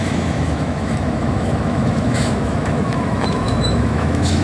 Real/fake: fake